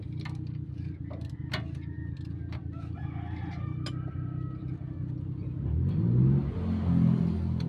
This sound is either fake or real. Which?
real